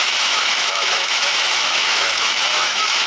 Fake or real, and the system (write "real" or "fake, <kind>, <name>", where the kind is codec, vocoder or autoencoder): fake, autoencoder, DAC-VAE